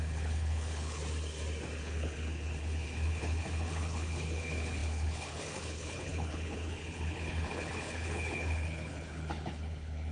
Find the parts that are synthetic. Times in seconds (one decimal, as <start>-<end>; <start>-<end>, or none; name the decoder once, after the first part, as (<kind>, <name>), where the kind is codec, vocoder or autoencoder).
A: 0.0-1.0 (codec, HILCodec); 1.8-10.1

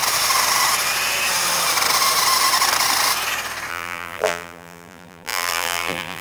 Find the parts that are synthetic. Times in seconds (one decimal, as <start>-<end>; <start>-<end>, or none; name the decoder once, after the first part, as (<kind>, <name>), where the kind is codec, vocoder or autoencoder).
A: 3.7-6.2 (vocoder, BigVGAN v2)

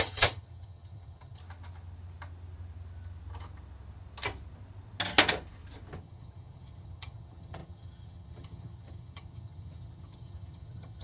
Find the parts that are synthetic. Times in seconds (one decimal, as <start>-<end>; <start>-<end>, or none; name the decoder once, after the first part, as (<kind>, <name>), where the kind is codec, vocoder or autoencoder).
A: 0.0-1.4 (vocoder, HiFi-GAN); 6.0-11.0